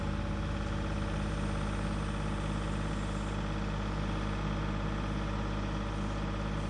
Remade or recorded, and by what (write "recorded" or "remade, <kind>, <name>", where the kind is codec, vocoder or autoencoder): recorded